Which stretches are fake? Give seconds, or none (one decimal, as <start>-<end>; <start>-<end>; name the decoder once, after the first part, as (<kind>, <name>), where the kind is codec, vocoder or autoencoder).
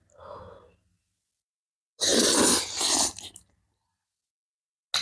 none